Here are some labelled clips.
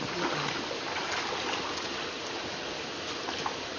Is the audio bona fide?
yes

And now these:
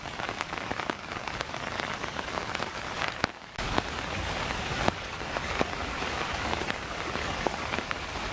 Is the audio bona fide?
no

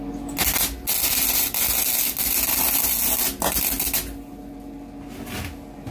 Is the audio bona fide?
yes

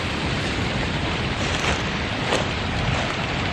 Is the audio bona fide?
no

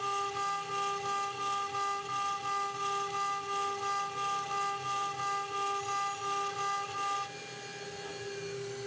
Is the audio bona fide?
yes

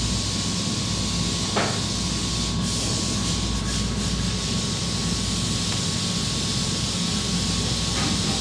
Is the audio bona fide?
yes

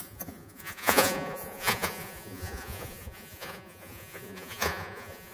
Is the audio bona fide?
no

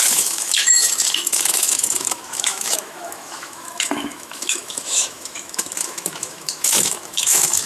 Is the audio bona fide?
no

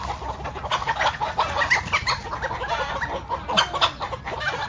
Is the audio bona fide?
yes